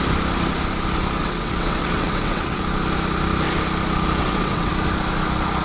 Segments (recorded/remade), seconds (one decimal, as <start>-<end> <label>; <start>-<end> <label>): 0.0-1.2 recorded; 1.2-2.6 remade; 2.6-4.2 recorded; 4.2-4.7 remade; 4.7-5.6 recorded